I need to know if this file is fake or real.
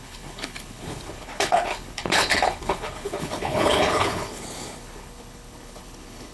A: fake